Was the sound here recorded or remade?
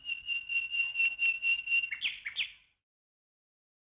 recorded